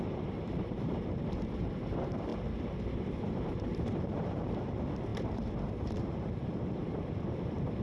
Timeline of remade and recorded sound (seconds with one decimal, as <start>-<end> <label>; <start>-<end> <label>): 0.0-7.8 remade